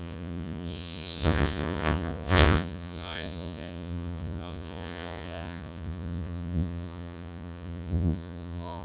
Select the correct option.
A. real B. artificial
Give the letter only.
B